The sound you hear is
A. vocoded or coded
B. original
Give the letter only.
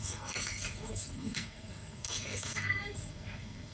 A